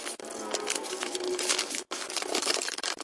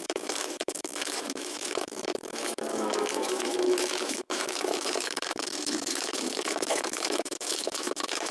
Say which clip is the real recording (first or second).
first